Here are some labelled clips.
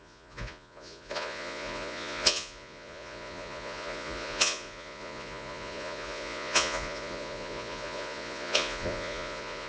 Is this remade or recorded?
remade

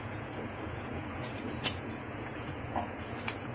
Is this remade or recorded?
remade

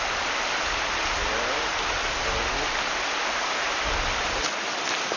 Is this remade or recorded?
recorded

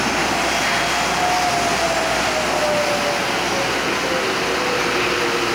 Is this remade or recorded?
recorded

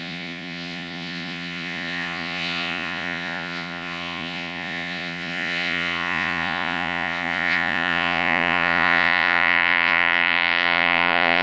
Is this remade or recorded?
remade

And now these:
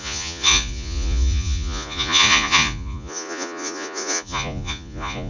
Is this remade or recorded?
remade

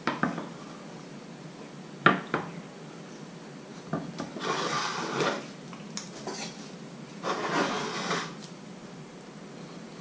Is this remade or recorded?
recorded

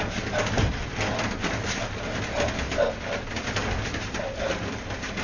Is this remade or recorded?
recorded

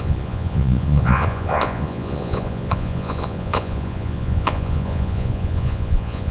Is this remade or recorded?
remade